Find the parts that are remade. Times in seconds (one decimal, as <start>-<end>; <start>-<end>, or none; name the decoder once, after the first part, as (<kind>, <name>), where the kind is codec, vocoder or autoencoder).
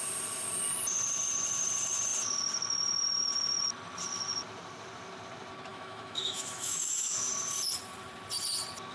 5.7-7.3 (autoencoder, DAC-VAE)